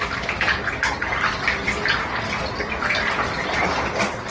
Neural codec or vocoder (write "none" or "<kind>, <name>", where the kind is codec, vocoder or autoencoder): none